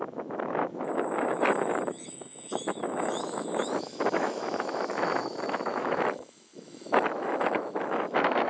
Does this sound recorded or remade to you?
remade